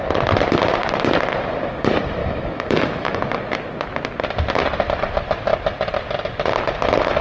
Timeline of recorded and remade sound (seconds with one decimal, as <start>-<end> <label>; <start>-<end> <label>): 0.0-2.2 recorded; 2.2-3.2 remade; 3.2-7.2 recorded